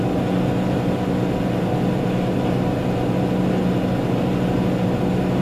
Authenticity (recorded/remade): recorded